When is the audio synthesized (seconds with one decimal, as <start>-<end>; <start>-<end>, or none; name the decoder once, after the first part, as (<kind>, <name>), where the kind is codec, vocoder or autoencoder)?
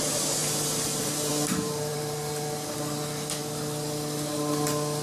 1.9-3.4 (vocoder, BigVGAN v2)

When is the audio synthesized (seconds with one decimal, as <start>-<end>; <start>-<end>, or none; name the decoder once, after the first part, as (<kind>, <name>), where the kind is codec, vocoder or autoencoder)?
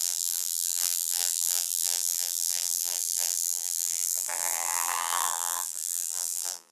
0.0-6.7 (vocoder, BigVGAN v2)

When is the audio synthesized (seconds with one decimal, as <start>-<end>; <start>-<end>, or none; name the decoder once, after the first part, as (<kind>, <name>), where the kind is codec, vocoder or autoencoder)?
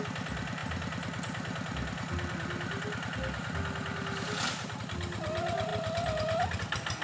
none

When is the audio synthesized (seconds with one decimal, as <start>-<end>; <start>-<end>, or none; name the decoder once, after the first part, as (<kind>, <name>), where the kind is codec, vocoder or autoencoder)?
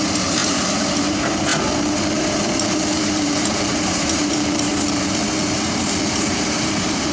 0.0-4.7 (vocoder, BigVGAN v2); 6.2-7.1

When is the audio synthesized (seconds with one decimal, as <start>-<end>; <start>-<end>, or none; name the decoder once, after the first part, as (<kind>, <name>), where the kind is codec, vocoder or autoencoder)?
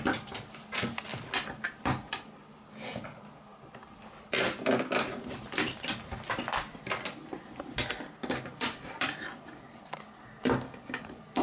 none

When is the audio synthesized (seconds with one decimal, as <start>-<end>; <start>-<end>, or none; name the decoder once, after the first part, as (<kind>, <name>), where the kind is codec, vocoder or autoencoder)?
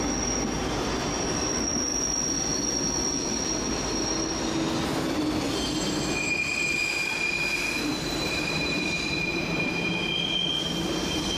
7.9-10.1 (vocoder, BigVGAN v2)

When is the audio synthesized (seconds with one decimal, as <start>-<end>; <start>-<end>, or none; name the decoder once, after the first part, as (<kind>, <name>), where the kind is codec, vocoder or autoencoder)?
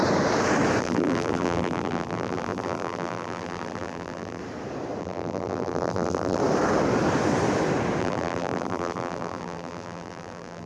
0.8-4.4 (vocoder, BigVGAN v2); 5.0-6.4; 8.0-10.7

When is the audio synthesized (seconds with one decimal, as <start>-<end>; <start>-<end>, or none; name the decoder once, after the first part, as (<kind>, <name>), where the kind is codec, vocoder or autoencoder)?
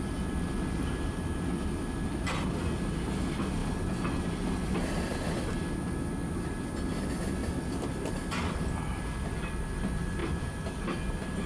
7.4-9.2 (vocoder, BigVGAN v2); 10.2-10.8